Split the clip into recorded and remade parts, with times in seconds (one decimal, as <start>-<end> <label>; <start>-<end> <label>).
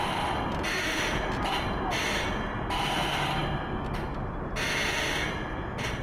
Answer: 0.0-6.0 recorded